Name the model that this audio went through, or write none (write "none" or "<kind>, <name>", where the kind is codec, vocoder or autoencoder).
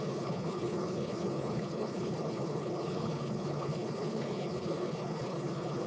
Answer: codec, HILCodec